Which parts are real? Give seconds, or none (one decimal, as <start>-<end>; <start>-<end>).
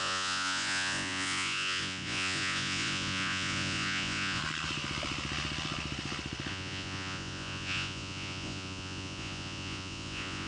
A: 4.4-6.5